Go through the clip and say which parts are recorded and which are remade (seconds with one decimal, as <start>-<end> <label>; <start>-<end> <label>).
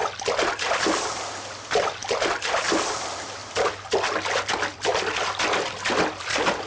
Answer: 0.0-0.8 recorded; 0.8-3.4 remade; 3.4-6.1 recorded; 6.1-6.7 remade